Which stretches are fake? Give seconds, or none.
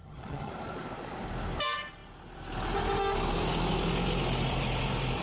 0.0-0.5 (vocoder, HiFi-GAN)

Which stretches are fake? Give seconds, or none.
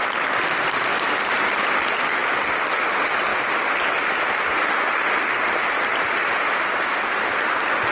none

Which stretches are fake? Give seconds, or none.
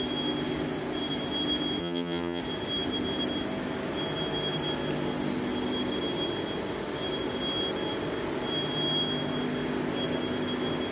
1.8-2.4 (vocoder, HiFi-GAN)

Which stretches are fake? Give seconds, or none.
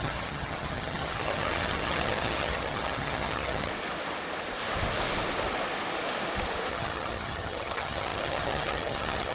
0.0-3.7 (vocoder, HiFi-GAN); 6.7-9.3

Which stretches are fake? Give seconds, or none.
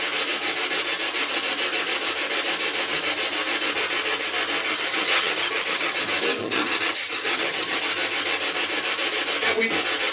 4.6-6.0 (vocoder, HiFi-GAN); 6.4-7.8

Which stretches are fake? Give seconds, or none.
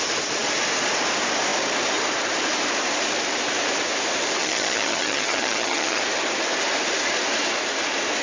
4.4-6.0 (vocoder, HiFi-GAN)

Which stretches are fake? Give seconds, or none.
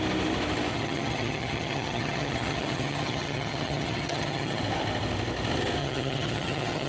0.7-4.6 (vocoder, HiFi-GAN); 5.8-6.9